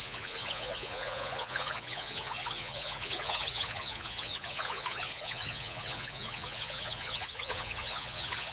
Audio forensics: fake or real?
fake